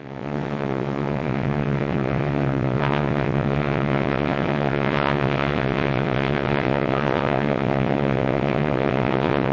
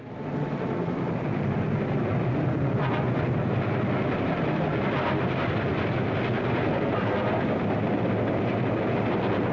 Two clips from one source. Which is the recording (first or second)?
second